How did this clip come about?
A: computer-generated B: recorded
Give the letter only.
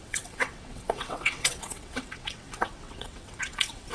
A